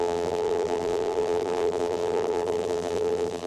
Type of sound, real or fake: fake